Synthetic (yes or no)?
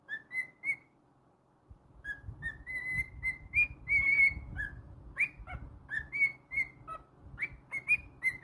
no